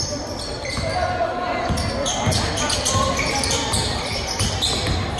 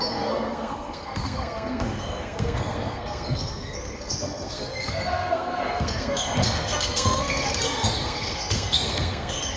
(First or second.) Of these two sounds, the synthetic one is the second